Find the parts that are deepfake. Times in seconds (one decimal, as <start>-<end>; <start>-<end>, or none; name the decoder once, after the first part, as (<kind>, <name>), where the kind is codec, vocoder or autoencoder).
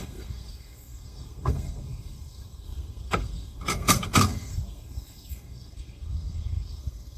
0.0-7.2 (codec, SNAC)